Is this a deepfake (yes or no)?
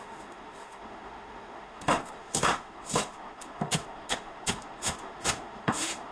yes